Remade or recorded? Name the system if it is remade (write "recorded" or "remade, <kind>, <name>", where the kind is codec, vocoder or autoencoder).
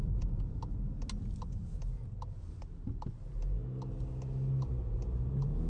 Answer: recorded